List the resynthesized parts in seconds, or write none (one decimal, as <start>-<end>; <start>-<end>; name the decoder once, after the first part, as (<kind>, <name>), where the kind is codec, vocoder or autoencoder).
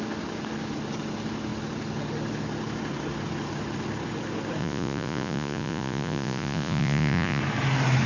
4.6-7.4 (vocoder, Vocos)